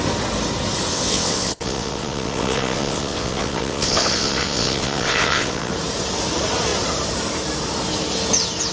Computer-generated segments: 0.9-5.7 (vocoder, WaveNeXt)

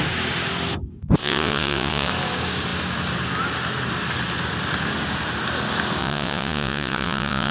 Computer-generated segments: 1.2-2.1 (vocoder, WaveNeXt); 6.0-7.5

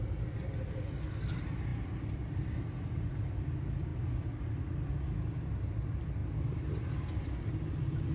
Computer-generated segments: none

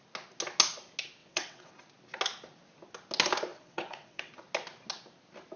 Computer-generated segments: 1.2-1.7 (vocoder, WaveNeXt); 3.5-4.3